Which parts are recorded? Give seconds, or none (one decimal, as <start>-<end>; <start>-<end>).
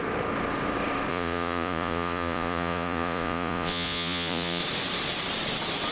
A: 0.0-1.1; 4.6-5.9